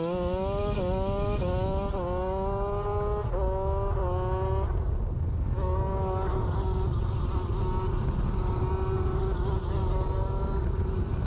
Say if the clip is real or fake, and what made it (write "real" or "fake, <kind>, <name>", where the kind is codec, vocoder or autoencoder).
real